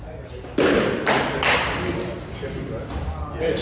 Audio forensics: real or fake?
real